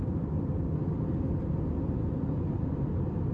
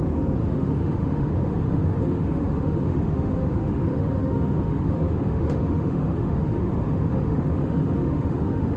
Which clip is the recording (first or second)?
first